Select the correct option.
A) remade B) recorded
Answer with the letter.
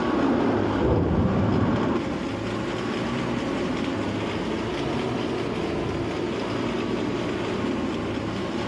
B